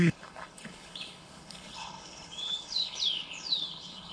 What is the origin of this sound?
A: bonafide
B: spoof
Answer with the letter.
B